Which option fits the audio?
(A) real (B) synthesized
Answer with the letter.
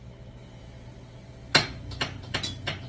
A